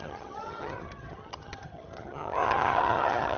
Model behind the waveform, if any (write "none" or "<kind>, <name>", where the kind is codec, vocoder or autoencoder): vocoder, HiFi-GAN